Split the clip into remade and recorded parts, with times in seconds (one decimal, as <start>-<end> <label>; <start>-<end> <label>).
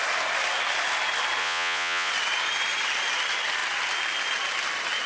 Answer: 0.0-1.4 recorded; 1.4-2.1 remade; 2.1-5.1 recorded